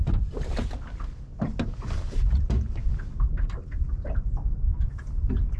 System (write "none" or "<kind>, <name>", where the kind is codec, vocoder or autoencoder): none